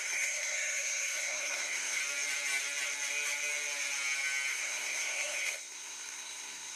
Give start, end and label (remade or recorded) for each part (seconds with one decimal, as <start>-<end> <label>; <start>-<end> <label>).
0.0-2.0 remade; 2.0-4.5 recorded; 4.5-6.8 remade